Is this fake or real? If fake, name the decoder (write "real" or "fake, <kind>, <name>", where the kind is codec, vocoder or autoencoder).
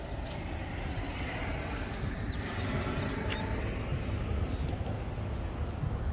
real